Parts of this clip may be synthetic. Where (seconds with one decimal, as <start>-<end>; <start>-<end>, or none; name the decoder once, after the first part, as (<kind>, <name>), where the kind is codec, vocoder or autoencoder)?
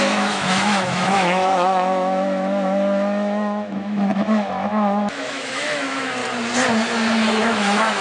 0.0-6.2 (autoencoder, DAC-VAE); 7.4-8.0